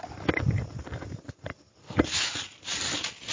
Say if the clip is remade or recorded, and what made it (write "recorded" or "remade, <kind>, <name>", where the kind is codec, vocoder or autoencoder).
recorded